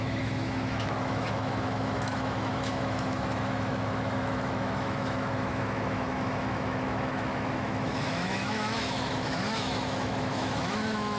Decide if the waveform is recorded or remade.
remade